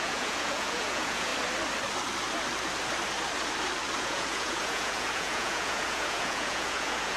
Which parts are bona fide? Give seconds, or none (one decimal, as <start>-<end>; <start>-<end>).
1.3-4.0